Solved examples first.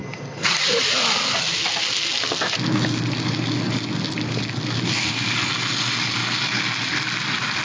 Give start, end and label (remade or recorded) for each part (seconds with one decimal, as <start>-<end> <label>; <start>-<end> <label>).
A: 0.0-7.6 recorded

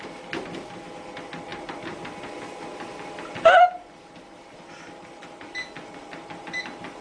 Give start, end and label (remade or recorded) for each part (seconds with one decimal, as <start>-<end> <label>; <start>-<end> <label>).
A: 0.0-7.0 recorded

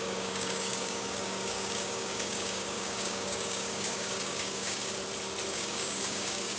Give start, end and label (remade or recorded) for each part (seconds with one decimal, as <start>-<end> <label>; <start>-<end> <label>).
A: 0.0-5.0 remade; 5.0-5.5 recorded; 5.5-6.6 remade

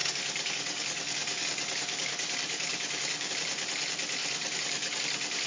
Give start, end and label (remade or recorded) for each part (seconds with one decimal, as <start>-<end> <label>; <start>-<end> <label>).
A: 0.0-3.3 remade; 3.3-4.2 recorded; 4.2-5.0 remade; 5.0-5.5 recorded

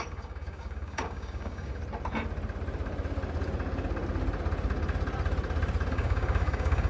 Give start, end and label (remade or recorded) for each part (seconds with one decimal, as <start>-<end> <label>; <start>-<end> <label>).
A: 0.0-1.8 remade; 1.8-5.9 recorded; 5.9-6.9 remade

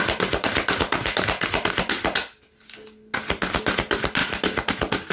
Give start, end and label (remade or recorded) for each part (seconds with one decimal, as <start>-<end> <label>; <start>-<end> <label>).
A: 0.0-5.1 recorded